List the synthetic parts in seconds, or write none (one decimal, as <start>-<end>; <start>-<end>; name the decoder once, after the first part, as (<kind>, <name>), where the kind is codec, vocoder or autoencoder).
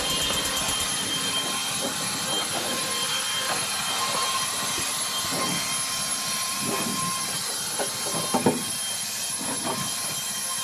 6.1-6.6 (vocoder, BigVGAN v2)